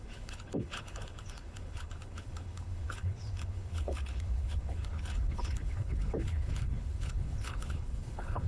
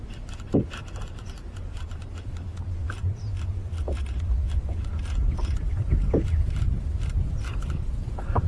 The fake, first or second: first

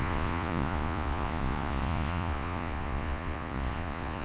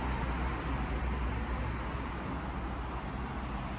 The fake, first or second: first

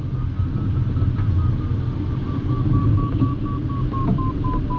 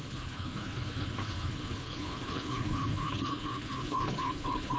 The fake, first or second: second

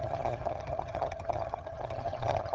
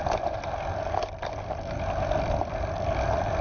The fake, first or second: first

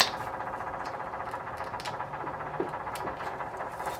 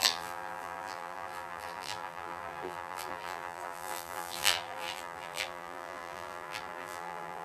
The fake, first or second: second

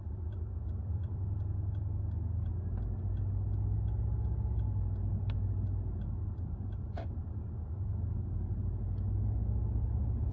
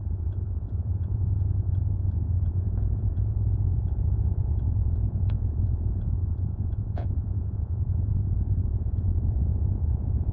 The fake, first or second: second